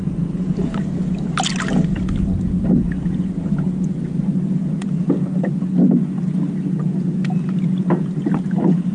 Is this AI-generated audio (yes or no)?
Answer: no